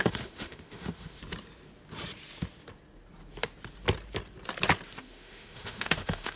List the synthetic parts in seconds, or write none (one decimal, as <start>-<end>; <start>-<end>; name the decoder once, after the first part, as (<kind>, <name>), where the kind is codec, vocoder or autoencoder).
0.0-1.2 (autoencoder, DAC-VAE); 5.0-6.4